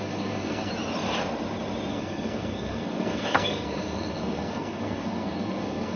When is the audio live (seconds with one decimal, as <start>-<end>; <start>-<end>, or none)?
0.7-1.9